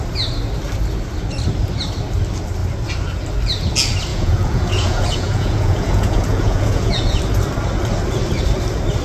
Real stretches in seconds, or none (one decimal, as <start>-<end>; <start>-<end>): 0.0-4.1; 7.2-9.0